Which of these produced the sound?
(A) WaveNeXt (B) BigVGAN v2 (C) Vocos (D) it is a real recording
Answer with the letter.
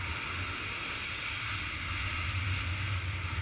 D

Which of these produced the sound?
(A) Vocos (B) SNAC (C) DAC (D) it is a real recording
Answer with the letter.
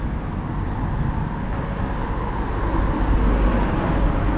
D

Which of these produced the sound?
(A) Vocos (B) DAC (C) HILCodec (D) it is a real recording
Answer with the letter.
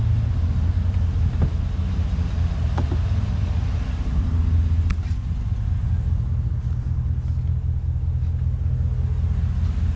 D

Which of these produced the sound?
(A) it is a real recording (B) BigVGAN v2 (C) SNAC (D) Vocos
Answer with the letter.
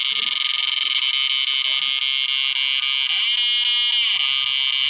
A